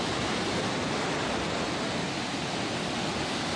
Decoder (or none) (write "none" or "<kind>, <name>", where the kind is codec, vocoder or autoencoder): none